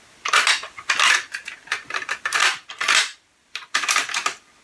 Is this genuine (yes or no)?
yes